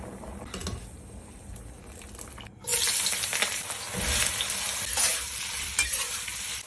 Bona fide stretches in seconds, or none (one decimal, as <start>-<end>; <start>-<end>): 0.0-6.7